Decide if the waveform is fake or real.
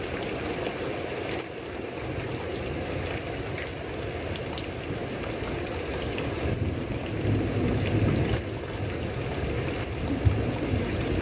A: real